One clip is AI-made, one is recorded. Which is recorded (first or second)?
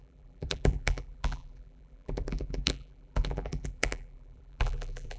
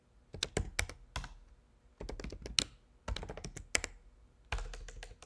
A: second